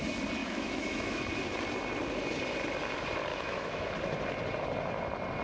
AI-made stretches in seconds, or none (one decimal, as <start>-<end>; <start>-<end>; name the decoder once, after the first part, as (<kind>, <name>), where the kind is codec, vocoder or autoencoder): 0.4-1.2 (autoencoder, DAC-VAE); 3.3-3.9